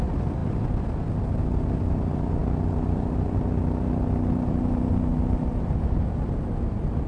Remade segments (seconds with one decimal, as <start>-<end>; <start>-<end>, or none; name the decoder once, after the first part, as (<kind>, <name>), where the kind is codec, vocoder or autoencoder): none